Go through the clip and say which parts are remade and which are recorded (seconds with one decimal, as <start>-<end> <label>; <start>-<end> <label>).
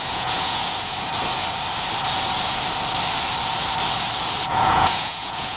0.0-1.1 remade; 1.1-4.5 recorded; 4.5-5.6 remade